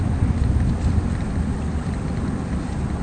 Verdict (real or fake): real